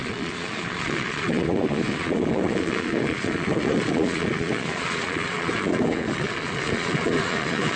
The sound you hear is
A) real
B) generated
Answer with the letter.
B